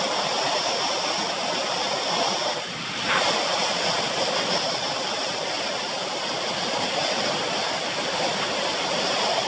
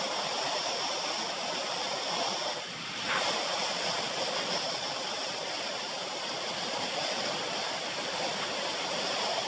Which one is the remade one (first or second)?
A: second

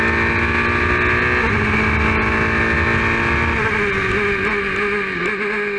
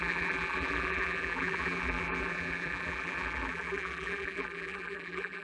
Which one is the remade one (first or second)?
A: second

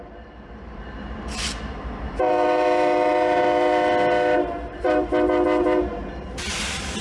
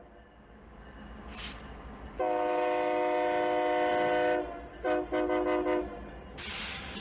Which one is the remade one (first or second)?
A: first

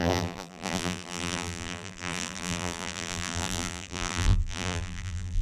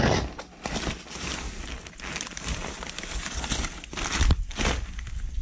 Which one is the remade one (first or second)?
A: first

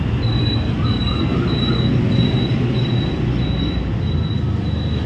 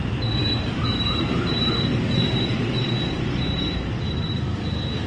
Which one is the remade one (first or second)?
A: second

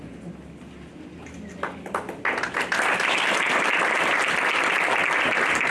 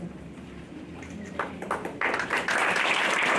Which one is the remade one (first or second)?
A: second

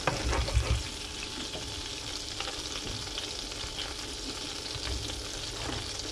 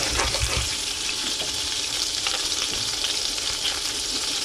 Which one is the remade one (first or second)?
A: second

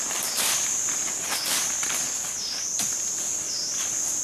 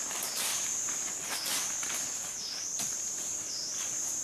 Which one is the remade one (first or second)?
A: first